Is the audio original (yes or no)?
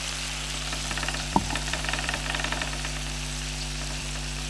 no